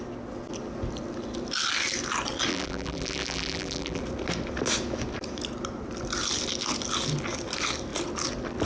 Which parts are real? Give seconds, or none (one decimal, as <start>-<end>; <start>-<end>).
0.0-2.5; 4.0-8.7